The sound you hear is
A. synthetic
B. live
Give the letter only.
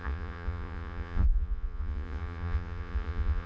A